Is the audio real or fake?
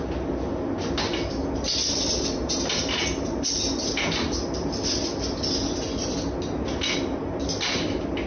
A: real